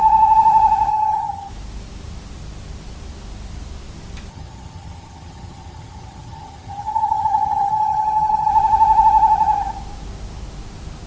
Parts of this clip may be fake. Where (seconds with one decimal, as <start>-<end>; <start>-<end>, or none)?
0.9-1.5; 4.3-8.5